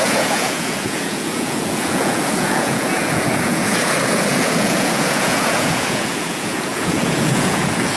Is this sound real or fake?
fake